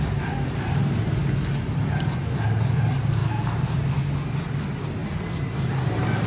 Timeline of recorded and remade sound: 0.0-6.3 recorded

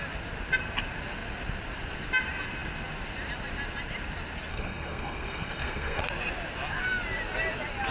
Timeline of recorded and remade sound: 0.0-4.5 recorded; 4.5-6.0 remade; 6.0-7.9 recorded

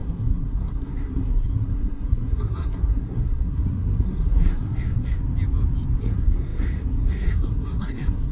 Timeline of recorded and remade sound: 0.0-5.2 remade; 5.2-6.0 recorded; 6.0-8.3 remade

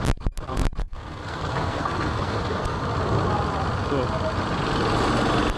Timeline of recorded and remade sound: 0.0-0.8 recorded; 0.8-2.8 remade; 2.8-5.6 recorded

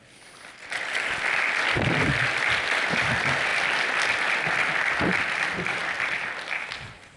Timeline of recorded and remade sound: 0.0-7.2 recorded

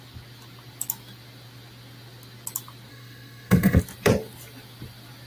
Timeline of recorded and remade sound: 0.0-2.9 recorded; 2.9-3.8 remade; 3.8-5.3 recorded